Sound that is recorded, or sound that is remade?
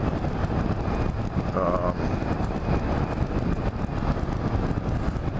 recorded